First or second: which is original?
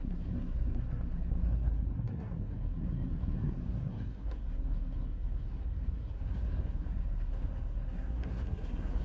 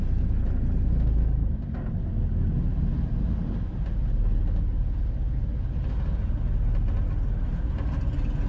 second